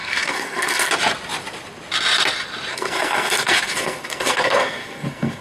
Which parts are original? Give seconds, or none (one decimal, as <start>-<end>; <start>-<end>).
0.9-2.7